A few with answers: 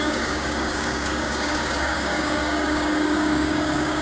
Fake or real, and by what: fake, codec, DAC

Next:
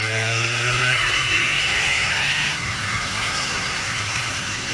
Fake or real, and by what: fake, codec, SNAC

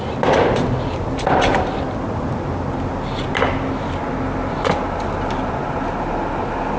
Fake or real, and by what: real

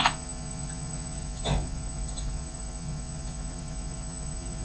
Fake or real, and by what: fake, vocoder, Vocos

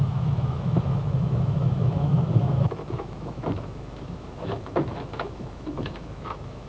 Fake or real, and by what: fake, autoencoder, DAC-VAE